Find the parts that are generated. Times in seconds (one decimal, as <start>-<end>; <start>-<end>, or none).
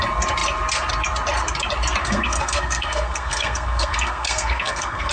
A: 2.0-5.1